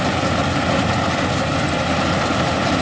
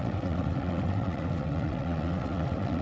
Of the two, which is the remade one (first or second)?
second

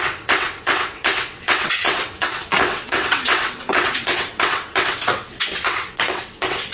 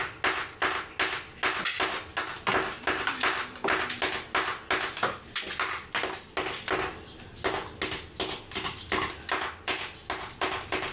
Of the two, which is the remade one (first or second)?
first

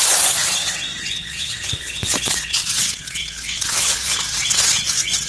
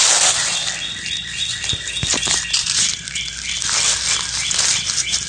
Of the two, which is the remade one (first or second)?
first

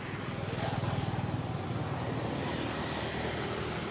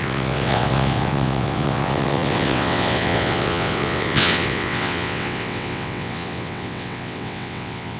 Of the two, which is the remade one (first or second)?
second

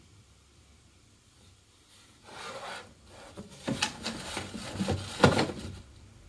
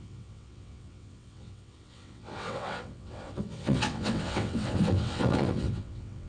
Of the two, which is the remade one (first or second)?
second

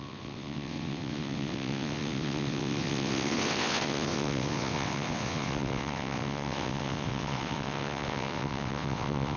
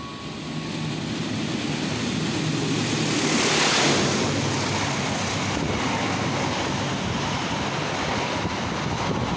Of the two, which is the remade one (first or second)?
first